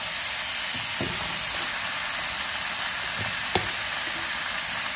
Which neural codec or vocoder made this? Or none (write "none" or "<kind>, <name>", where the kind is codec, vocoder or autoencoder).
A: none